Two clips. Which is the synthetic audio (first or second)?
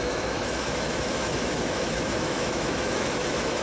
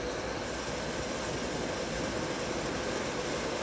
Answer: first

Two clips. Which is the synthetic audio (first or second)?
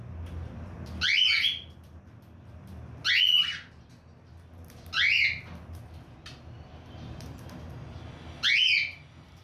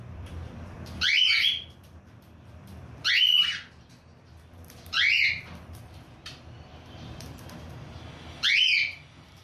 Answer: second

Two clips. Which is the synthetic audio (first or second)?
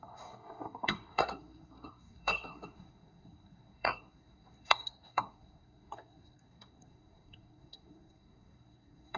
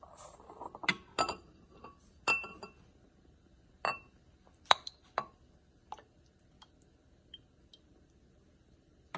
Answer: first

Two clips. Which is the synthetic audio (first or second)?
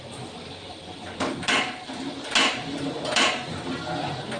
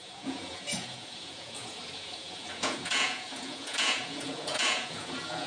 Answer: second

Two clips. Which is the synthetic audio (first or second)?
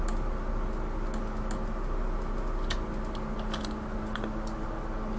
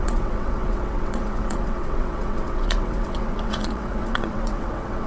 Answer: second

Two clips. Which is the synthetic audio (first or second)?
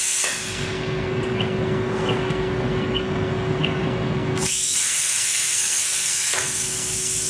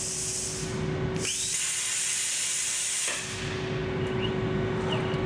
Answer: first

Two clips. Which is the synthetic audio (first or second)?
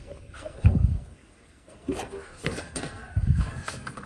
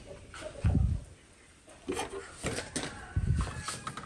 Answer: first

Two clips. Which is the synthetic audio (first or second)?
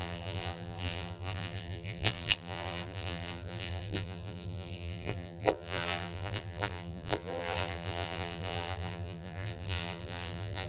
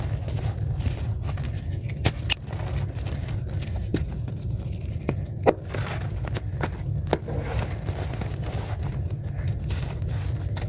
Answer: first